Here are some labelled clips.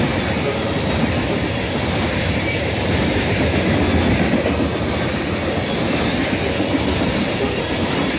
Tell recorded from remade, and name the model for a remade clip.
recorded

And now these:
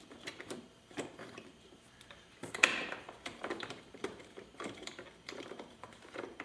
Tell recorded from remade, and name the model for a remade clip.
remade, vocoder, BigVGAN v2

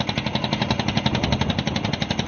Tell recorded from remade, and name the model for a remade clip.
remade, vocoder, BigVGAN v2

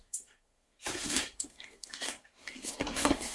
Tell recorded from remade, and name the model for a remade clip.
remade, codec, SNAC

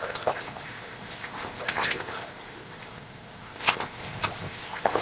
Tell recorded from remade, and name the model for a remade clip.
remade, codec, ZipCodec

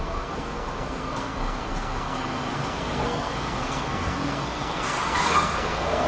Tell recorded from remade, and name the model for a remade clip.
remade, codec, SNAC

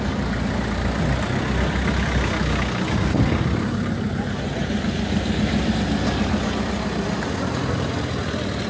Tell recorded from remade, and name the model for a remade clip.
recorded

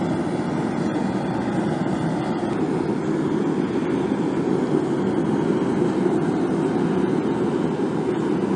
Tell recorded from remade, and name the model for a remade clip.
recorded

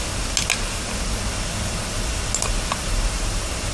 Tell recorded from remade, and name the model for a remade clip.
recorded